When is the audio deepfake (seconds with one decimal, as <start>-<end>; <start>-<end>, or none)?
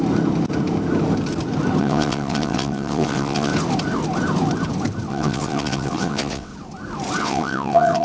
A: 1.8-3.5; 5.1-6.5; 7.2-8.0